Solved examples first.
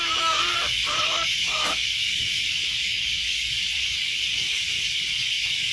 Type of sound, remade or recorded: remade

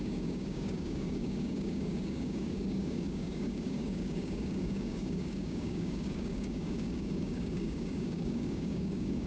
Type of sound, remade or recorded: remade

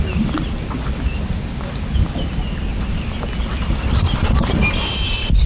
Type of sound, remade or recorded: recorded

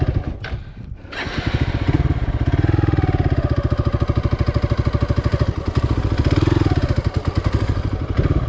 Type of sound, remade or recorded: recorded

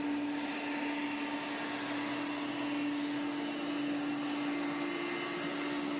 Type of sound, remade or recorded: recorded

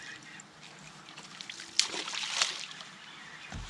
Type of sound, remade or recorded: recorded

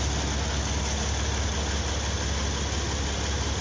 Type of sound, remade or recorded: recorded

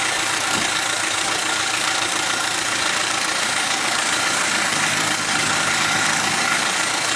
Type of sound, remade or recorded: remade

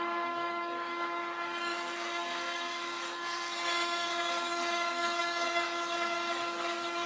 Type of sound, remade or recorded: remade